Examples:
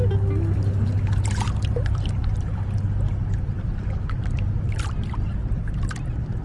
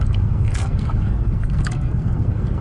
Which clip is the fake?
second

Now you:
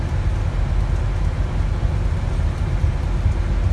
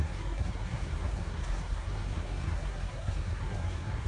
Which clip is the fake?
second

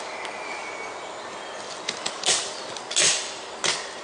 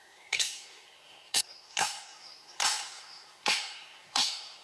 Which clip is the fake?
second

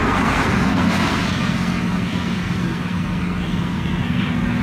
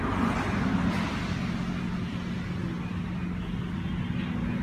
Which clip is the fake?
first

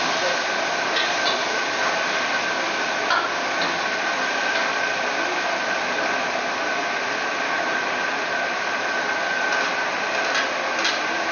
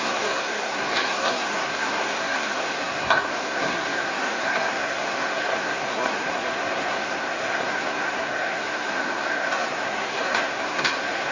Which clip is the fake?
second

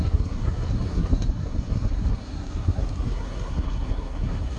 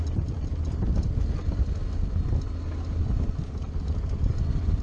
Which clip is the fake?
first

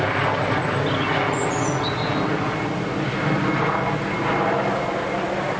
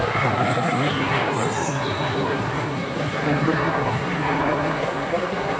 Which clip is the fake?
second